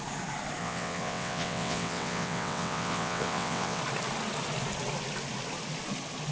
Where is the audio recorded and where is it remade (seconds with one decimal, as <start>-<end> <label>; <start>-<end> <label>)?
0.0-0.6 recorded; 0.6-3.8 remade; 3.8-6.3 recorded